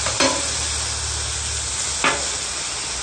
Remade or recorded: recorded